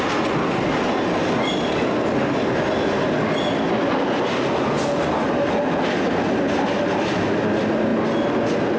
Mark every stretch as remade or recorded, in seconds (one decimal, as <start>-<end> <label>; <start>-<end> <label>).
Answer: 0.0-8.8 recorded